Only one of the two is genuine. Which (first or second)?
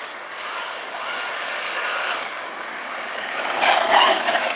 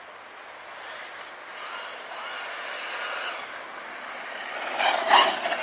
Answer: second